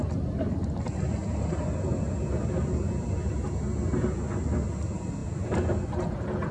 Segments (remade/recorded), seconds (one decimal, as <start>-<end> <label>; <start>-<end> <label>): 0.0-6.5 recorded